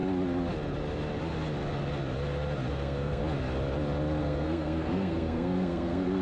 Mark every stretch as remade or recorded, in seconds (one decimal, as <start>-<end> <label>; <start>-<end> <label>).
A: 0.0-2.7 recorded; 2.7-3.2 remade; 3.2-4.2 recorded; 4.2-6.2 remade